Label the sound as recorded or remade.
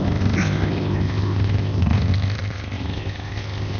remade